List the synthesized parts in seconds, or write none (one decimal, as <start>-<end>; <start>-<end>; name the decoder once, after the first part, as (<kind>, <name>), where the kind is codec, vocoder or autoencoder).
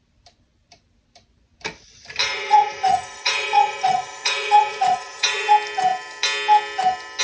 2.2-5.5 (vocoder, Vocos)